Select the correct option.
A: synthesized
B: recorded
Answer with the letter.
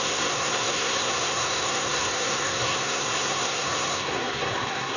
A